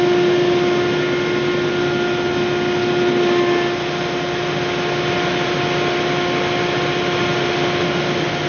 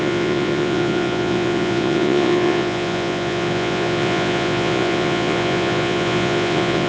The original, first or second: first